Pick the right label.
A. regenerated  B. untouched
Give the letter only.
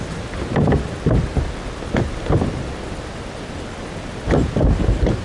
B